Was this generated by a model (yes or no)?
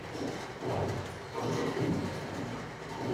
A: no